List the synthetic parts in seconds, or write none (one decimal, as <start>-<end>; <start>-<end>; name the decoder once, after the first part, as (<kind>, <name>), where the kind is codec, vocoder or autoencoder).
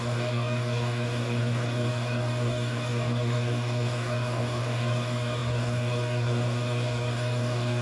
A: 0.0-7.8 (codec, DAC)